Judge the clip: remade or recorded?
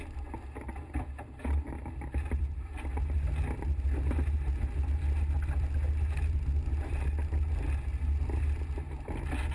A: recorded